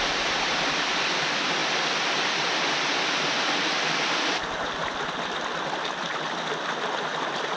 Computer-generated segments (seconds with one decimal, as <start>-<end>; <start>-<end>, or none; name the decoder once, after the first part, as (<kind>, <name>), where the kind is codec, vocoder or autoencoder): none